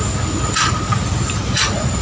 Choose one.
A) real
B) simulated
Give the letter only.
A